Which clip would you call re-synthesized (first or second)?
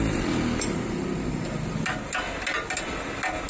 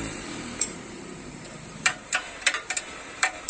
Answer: second